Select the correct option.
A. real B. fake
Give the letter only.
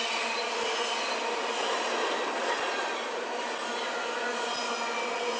A